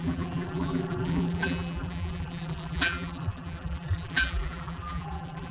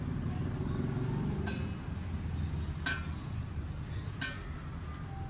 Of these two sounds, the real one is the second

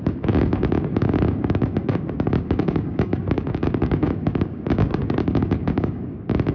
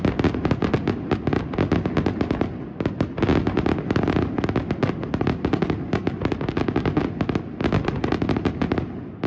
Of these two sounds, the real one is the second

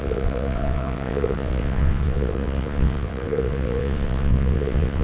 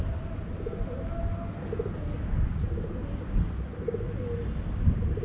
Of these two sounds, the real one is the second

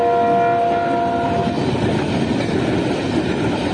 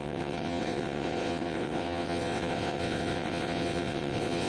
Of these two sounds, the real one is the first